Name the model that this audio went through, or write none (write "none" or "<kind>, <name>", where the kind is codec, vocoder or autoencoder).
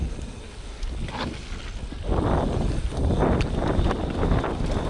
none